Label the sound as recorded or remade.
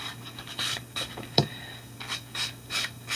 remade